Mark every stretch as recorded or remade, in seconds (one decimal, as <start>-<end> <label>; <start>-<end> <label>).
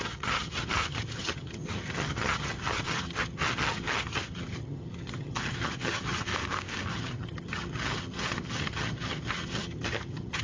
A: 0.0-6.3 remade; 6.3-6.9 recorded; 6.9-10.4 remade